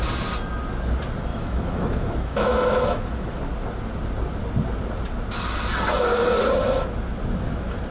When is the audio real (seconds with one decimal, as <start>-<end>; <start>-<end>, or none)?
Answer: 0.0-1.3; 3.4-7.9